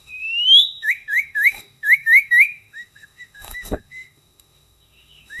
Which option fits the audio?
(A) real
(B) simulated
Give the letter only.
B